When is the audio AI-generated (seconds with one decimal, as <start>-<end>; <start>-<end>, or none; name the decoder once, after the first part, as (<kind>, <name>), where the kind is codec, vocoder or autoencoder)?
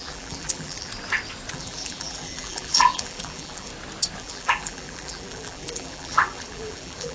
0.0-0.9 (vocoder, BigVGAN v2); 1.5-3.7; 4.2-7.1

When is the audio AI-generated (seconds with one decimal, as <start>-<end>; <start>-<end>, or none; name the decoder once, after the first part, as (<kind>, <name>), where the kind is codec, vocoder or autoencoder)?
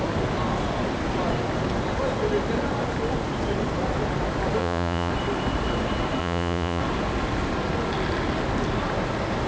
4.6-5.1 (vocoder, Vocos); 6.2-6.8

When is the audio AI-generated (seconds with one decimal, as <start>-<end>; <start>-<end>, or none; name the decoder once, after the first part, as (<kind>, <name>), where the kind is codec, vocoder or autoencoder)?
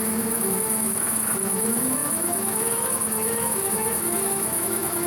0.0-5.1 (autoencoder, DAC-VAE)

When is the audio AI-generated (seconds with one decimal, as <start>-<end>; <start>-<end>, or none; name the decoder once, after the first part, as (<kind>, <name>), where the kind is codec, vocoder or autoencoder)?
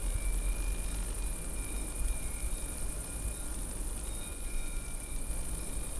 4.3-5.3 (vocoder, Vocos)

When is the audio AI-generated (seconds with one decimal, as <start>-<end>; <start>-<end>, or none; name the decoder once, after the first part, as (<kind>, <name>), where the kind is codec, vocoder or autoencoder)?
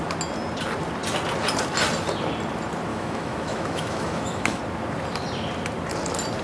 2.9-4.6 (autoencoder, DAC-VAE)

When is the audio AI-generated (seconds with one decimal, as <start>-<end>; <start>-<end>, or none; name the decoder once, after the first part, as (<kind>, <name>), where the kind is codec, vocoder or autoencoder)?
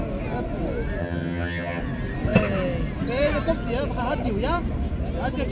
1.0-1.8 (vocoder, HiFi-GAN)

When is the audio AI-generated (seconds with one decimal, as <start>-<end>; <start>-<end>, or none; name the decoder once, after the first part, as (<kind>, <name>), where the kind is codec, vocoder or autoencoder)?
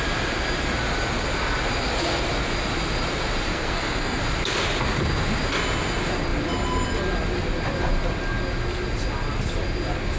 3.5-4.2 (codec, SNAC)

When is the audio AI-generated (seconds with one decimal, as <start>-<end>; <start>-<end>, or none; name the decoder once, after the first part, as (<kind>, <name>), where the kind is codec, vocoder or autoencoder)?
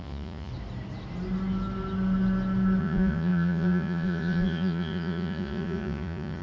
0.0-0.5 (vocoder, Vocos); 2.8-6.4